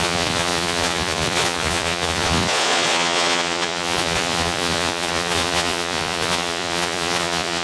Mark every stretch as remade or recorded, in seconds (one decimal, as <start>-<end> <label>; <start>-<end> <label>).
0.0-7.6 remade